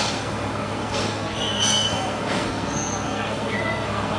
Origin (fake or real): fake